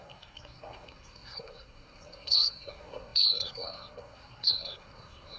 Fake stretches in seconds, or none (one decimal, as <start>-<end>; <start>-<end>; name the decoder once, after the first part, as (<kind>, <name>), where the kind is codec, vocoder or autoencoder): 0.0-5.4 (codec, SNAC)